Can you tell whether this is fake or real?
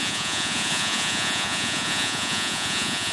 fake